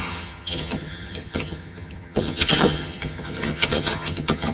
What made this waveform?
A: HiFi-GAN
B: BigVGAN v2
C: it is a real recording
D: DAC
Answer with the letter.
A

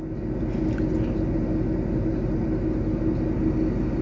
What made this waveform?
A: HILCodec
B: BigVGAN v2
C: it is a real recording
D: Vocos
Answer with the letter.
C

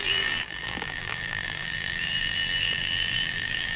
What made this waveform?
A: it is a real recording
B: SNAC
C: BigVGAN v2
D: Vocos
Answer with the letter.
C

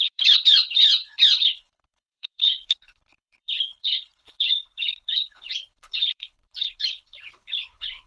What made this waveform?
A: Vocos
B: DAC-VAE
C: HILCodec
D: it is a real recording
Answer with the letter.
C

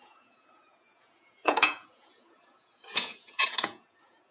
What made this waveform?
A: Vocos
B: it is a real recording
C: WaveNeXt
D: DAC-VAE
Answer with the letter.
A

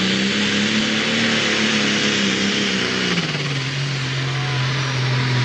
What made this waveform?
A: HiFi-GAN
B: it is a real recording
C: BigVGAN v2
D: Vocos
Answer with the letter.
B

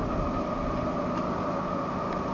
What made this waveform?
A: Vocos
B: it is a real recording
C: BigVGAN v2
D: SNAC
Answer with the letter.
B